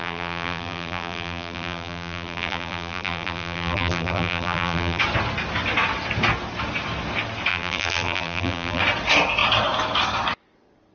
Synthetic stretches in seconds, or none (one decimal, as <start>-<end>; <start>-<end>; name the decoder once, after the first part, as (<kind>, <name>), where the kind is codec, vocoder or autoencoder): 0.0-5.0 (vocoder, BigVGAN v2); 7.5-8.8

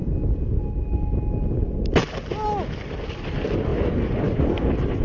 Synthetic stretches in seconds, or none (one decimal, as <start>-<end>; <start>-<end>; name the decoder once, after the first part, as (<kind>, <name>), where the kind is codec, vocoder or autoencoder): none

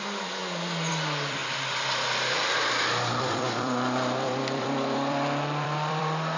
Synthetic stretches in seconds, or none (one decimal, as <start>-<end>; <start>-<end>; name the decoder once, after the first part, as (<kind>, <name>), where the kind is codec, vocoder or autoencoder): 0.0-0.4 (vocoder, BigVGAN v2); 0.9-6.4

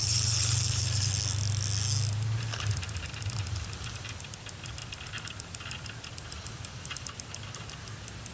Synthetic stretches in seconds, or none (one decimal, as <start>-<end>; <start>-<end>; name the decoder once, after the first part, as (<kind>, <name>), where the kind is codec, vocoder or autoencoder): 0.0-1.1 (vocoder, BigVGAN v2)

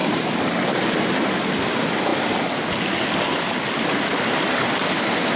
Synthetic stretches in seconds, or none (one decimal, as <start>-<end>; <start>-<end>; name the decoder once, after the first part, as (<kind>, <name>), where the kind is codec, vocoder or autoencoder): 0.0-0.6 (vocoder, BigVGAN v2)

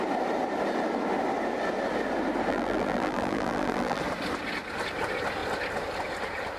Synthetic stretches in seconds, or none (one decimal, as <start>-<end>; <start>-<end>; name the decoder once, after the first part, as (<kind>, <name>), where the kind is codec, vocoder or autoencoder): 2.5-4.0 (vocoder, BigVGAN v2)

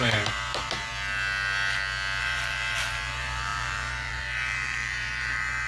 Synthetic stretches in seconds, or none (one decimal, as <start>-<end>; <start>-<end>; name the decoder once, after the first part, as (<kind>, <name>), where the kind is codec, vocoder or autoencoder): 0.0-0.9 (vocoder, BigVGAN v2); 2.2-5.7

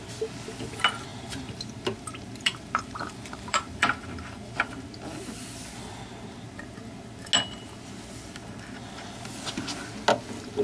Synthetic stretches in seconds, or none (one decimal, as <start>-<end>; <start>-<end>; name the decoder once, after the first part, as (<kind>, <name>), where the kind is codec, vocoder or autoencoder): 1.1-4.7 (vocoder, BigVGAN v2)